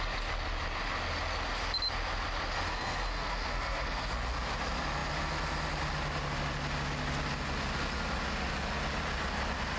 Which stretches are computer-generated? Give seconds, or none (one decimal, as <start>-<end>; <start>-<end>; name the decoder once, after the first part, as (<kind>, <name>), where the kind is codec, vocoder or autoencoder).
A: 2.7-4.1 (codec, SNAC)